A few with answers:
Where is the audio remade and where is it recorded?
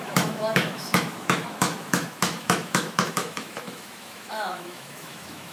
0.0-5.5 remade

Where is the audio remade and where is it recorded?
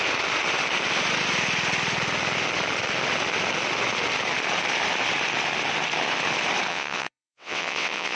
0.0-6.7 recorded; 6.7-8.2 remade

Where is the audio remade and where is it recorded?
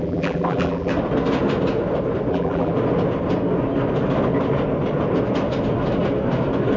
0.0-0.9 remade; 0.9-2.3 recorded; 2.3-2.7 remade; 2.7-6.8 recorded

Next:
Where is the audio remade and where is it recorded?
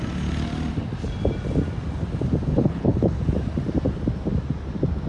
0.0-2.5 recorded; 2.5-3.2 remade; 3.2-5.1 recorded